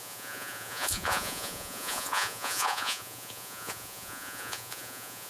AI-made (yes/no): yes